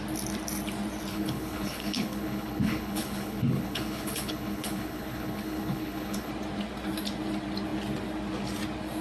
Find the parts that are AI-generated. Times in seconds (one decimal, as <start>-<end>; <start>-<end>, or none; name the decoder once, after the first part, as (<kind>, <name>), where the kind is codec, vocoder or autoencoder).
1.1-6.3 (codec, HILCodec)